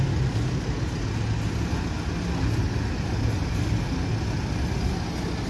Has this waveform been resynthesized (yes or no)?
no